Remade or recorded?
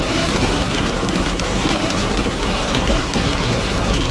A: remade